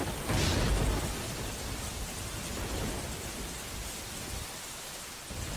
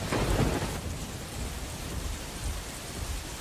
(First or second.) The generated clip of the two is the second